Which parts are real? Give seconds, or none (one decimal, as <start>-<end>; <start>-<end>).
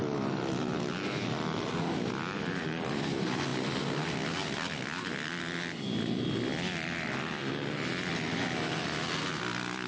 0.0-9.9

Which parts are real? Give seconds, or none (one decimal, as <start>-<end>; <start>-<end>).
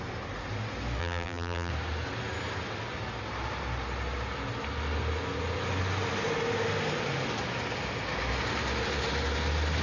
0.0-1.0; 1.7-9.8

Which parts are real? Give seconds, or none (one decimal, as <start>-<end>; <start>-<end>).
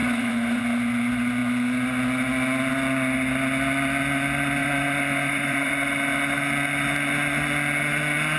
0.6-4.6; 5.7-8.4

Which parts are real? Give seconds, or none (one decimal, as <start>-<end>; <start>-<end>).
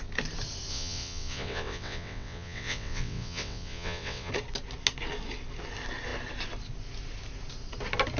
0.0-0.7; 4.3-8.2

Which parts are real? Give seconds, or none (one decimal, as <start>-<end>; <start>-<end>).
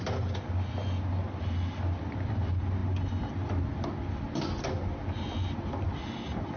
0.0-6.6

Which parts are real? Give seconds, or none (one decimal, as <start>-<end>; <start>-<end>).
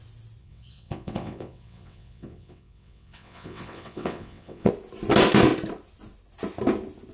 0.0-0.4; 4.7-7.1